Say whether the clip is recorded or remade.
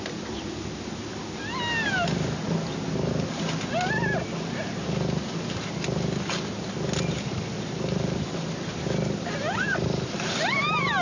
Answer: recorded